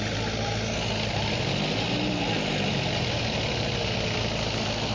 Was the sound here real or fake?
real